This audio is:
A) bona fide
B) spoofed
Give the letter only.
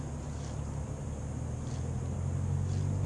A